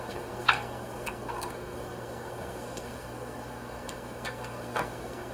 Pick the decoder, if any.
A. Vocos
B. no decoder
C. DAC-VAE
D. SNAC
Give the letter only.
D